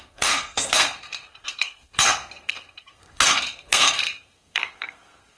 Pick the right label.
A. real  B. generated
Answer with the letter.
B